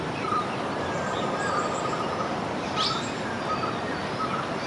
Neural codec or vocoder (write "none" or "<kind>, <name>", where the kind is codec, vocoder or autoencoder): none